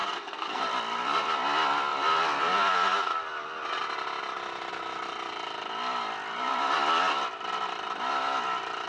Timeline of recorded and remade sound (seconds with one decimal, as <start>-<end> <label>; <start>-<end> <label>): 0.0-0.6 remade; 0.6-8.9 recorded